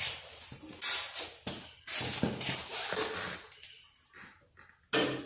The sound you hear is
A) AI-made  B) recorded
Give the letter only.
B